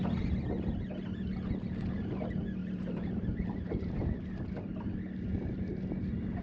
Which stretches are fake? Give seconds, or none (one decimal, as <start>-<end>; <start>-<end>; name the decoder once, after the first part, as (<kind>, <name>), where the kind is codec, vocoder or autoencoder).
2.6-4.2 (vocoder, BigVGAN v2)